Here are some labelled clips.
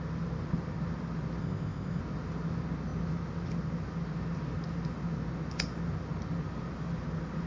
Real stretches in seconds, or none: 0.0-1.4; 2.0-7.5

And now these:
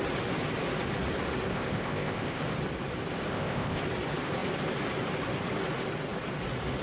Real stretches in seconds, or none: 0.0-1.5; 2.4-3.3; 3.8-6.8